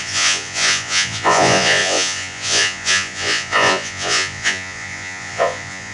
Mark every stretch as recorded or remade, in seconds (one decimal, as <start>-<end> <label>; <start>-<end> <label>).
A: 0.0-5.9 remade